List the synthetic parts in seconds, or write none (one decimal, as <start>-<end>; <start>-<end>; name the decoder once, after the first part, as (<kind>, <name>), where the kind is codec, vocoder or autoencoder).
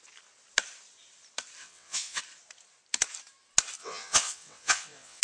1.6-2.2 (vocoder, WaveNeXt); 3.8-5.2